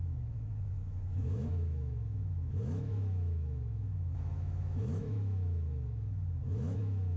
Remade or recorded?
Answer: remade